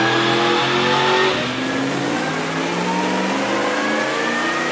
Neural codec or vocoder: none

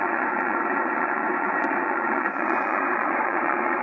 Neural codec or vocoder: vocoder, Vocos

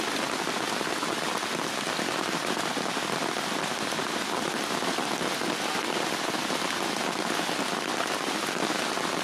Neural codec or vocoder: none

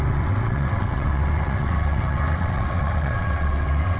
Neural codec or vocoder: vocoder, WaveNeXt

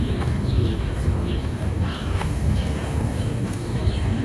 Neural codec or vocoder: codec, DAC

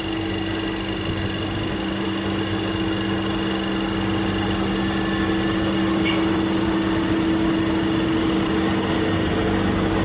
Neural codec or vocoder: none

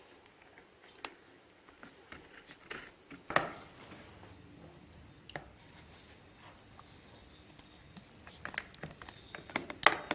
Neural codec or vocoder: none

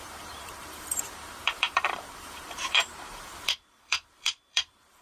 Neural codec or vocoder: vocoder, BigVGAN v2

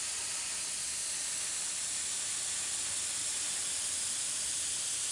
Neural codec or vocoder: none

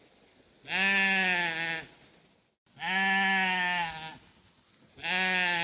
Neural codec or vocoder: none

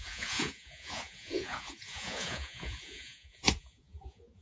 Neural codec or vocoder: vocoder, Vocos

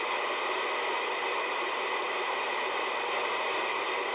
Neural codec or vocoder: none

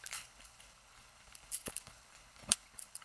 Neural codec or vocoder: codec, HILCodec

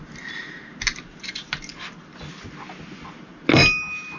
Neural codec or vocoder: none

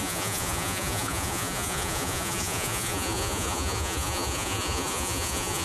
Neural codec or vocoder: vocoder, Vocos